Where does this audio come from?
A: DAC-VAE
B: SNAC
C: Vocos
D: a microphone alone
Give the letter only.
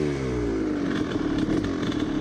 D